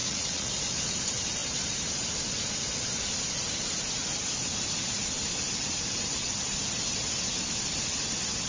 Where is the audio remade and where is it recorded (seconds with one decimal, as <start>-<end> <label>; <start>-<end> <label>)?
0.0-0.5 remade; 0.5-8.5 recorded